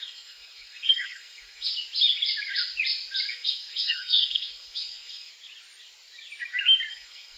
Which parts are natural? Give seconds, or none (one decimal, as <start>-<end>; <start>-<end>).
1.7-3.3; 5.3-6.9